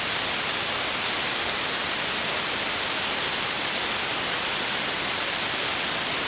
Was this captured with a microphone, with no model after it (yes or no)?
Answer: yes